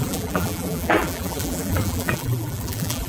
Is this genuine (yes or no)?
no